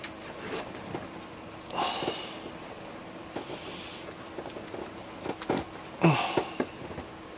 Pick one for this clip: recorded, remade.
recorded